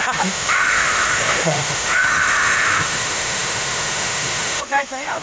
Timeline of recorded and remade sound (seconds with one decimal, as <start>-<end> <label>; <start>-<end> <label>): 0.0-5.2 remade